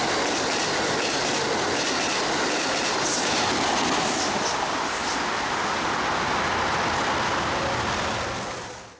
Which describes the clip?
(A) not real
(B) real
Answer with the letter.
B